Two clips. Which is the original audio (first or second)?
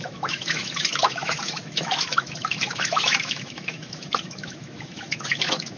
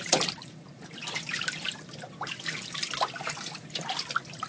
second